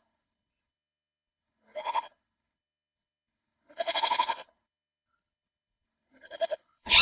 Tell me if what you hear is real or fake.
fake